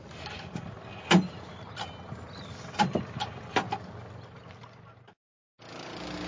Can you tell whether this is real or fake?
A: real